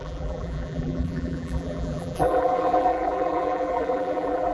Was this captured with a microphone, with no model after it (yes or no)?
no